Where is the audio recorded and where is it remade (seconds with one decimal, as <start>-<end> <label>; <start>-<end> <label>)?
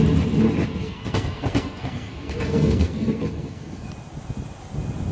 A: 0.0-0.8 recorded; 0.8-3.9 remade; 3.9-5.1 recorded